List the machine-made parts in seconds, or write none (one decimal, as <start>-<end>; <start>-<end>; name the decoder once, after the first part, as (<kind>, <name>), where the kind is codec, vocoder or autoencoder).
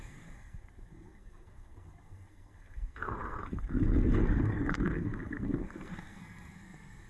0.0-7.1 (codec, SNAC)